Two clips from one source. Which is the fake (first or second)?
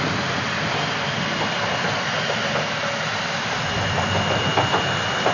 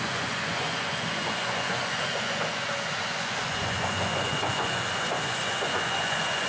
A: second